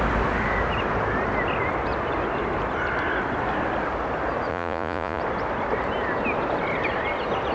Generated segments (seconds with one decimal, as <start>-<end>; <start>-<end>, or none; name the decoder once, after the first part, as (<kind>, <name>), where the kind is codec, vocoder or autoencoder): 4.5-5.2 (vocoder, Vocos)